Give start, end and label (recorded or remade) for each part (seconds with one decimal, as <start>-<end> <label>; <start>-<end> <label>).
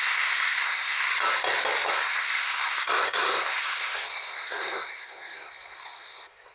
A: 0.0-1.1 remade; 1.1-1.9 recorded; 1.9-6.5 remade